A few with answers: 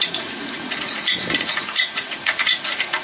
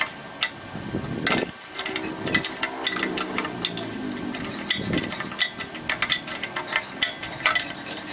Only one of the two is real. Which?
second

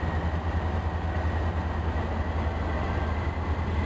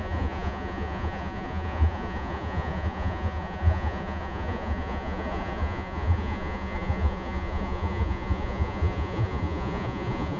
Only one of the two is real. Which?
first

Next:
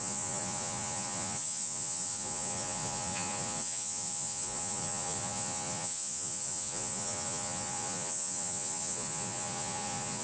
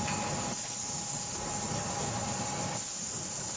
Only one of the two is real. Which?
second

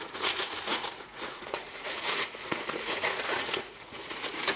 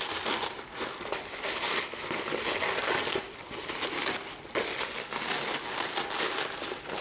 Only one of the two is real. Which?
second